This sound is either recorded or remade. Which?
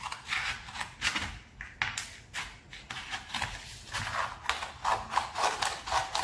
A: recorded